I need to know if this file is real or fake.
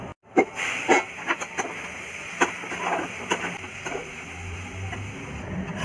real